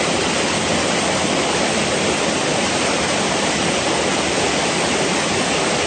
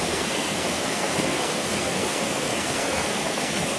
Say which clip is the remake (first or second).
second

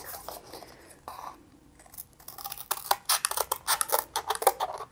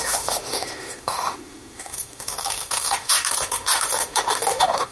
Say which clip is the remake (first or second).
second